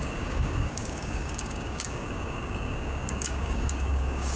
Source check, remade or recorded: remade